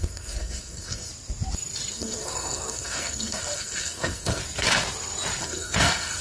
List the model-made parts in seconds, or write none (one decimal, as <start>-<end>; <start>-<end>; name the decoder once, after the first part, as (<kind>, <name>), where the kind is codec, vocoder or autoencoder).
0.0-1.1 (codec, SNAC); 1.9-4.4; 5.4-6.2